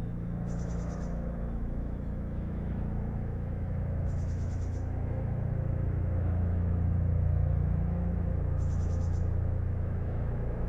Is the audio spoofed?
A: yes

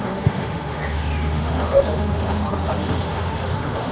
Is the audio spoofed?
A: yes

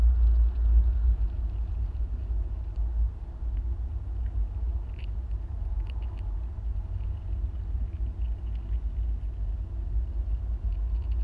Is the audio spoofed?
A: no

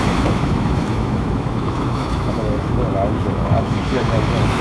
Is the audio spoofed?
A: yes